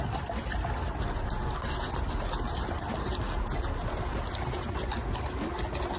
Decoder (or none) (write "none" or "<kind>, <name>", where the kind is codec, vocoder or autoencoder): none